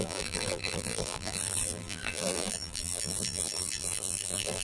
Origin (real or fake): fake